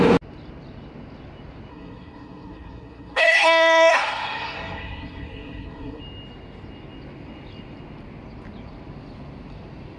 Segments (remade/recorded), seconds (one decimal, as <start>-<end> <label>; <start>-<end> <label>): 0.0-1.7 recorded; 1.7-6.0 remade; 6.0-10.0 recorded